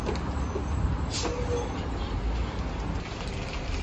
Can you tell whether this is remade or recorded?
recorded